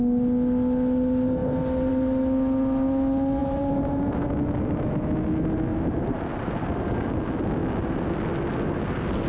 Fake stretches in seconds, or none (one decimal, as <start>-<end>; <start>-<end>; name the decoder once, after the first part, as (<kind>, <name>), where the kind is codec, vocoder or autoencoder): 3.4-4.3 (vocoder, BigVGAN v2); 5.7-6.5